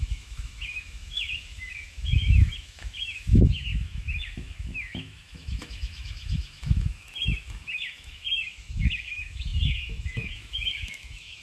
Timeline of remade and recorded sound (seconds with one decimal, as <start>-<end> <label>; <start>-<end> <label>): 0.0-11.4 remade